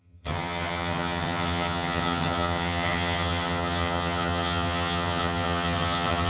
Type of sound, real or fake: fake